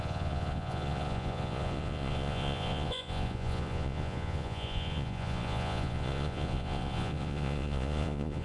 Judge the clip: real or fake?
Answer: fake